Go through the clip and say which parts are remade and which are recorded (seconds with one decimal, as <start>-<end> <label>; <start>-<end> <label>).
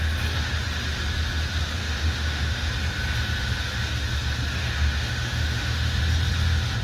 0.0-1.8 recorded; 1.8-2.7 remade; 2.7-4.6 recorded; 4.6-6.0 remade; 6.0-6.8 recorded